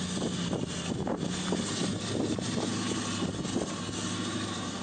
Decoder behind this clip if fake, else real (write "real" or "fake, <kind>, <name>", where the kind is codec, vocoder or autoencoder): real